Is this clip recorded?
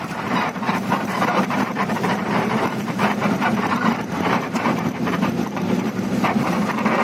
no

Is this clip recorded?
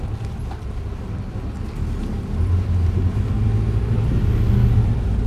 yes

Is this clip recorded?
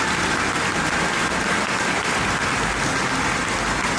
yes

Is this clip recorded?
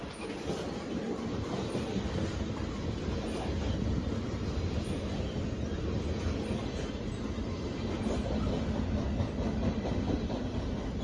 yes